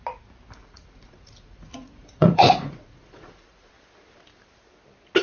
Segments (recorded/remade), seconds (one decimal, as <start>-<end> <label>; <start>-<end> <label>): 0.0-0.6 recorded; 0.6-3.7 remade; 3.7-5.2 recorded